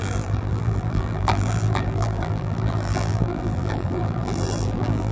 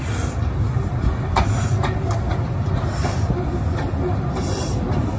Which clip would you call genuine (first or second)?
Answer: second